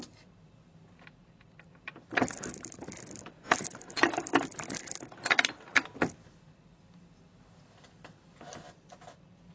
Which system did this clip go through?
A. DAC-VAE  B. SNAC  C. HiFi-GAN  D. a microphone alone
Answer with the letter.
D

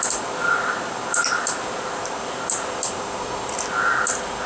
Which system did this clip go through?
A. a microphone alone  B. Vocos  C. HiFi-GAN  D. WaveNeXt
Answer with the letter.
A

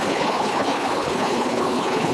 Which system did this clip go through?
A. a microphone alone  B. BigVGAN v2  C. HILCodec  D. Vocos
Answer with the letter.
C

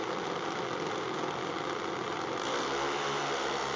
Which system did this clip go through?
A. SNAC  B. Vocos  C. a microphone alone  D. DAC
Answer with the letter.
C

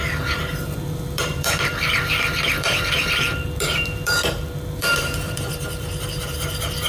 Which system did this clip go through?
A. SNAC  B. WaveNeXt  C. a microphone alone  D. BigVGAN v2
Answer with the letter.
D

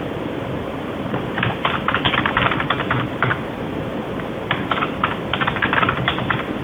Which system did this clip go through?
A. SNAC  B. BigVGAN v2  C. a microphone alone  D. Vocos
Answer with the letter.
C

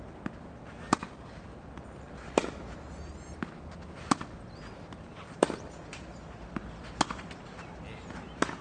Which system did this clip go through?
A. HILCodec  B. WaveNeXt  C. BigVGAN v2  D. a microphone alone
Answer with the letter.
D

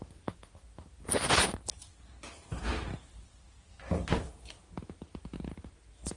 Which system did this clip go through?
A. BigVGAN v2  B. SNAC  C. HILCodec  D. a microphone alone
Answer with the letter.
D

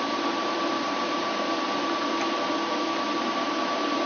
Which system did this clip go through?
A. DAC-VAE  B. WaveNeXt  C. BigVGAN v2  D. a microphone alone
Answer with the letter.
C